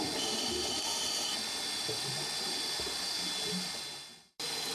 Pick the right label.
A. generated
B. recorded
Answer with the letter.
B